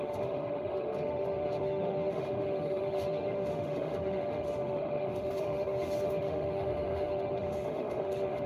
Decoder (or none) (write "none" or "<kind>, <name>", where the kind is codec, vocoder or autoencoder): autoencoder, DAC-VAE